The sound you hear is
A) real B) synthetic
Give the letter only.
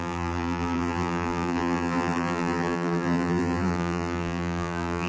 B